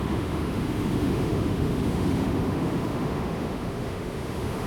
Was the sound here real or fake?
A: fake